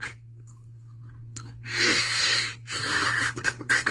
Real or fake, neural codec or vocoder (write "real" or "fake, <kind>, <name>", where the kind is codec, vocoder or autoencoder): fake, codec, SNAC